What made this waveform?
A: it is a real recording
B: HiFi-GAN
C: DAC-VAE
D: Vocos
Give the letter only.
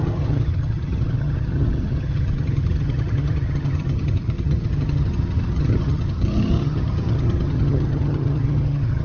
B